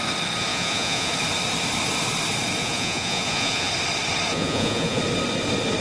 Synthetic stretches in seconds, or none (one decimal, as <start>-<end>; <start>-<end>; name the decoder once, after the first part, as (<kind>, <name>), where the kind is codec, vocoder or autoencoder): 0.5-1.1 (vocoder, Vocos); 2.6-3.7; 4.3-5.0